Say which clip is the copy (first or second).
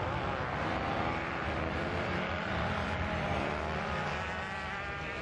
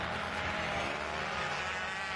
first